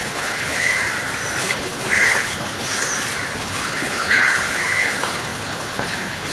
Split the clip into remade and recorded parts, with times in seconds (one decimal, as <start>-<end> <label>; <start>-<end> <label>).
0.0-0.8 remade; 0.8-1.4 recorded; 1.4-2.9 remade; 2.9-3.4 recorded; 3.4-6.3 remade